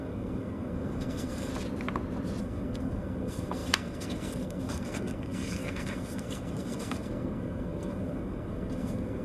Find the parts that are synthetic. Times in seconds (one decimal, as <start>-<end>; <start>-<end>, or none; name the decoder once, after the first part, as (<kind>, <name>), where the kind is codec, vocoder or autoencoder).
0.0-1.5 (codec, SNAC); 2.4-9.2